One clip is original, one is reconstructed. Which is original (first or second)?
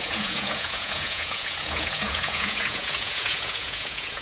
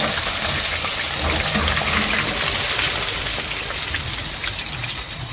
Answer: second